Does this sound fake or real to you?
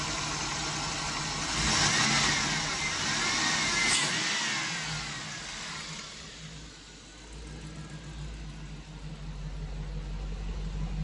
real